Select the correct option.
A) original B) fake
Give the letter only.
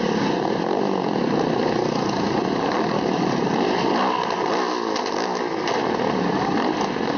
A